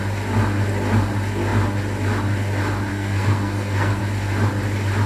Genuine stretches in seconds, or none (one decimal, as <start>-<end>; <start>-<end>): 0.0-2.9; 4.0-5.1